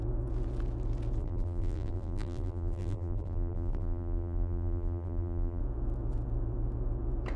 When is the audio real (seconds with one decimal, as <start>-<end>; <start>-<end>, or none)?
0.0-1.2; 5.6-7.4

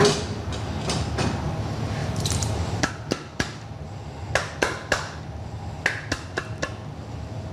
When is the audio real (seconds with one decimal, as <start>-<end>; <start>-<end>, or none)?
0.0-2.0; 2.9-7.5